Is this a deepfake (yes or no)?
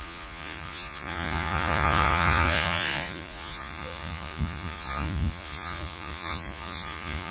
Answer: yes